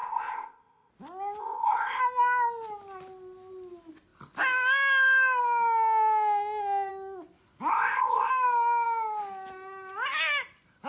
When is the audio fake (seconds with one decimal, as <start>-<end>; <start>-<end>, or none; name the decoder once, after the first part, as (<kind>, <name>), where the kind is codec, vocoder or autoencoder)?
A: 0.0-0.9 (codec, ZipCodec); 1.4-2.0; 7.7-8.3